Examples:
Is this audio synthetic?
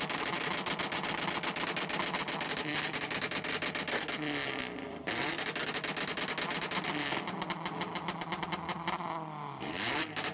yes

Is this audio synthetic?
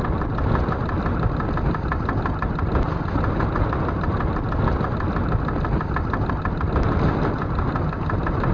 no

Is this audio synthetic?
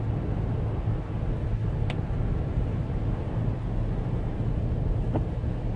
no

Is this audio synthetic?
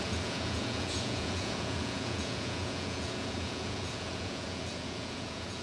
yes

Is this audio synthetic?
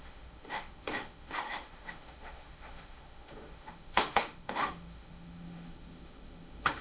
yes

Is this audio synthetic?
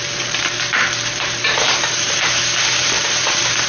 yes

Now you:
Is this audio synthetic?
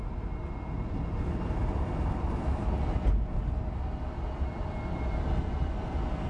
no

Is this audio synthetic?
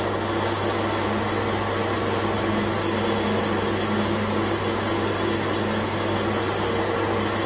no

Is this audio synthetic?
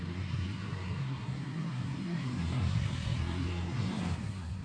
yes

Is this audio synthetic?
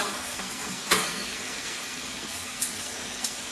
yes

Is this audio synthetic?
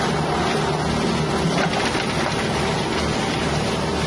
no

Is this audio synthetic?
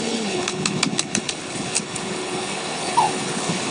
yes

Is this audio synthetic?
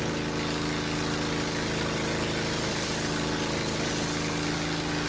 no